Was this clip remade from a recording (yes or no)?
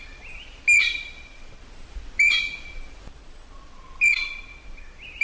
no